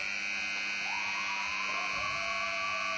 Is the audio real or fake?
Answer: real